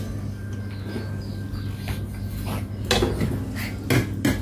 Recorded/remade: recorded